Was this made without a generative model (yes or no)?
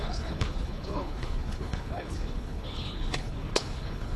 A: no